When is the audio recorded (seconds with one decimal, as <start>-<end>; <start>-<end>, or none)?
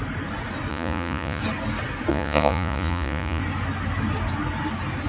0.0-0.7; 1.4-2.1; 3.4-5.1